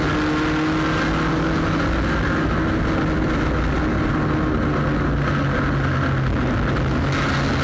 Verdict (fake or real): real